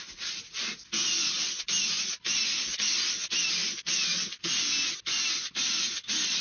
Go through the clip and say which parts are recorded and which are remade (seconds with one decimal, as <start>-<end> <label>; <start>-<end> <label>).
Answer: 0.0-6.4 recorded